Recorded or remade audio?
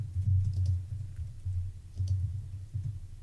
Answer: remade